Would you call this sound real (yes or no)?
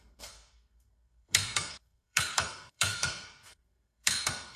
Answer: no